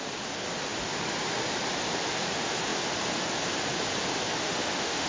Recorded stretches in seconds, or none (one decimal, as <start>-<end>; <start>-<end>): 0.0-4.4